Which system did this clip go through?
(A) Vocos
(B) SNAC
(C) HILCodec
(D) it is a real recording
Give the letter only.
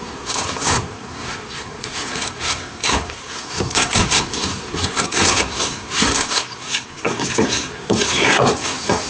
B